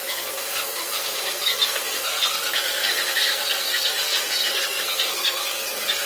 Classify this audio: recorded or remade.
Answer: remade